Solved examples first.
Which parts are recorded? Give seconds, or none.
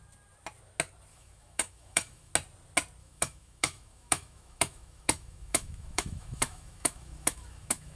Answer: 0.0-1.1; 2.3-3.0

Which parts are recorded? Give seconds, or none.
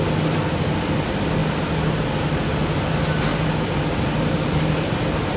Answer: 0.0-5.4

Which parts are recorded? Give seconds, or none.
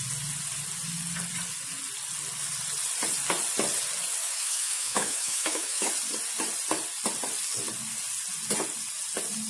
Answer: 0.0-4.2; 5.9-9.5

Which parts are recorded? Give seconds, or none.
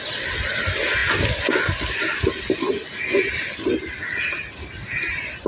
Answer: 0.0-5.5